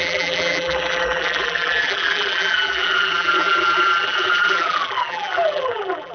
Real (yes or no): no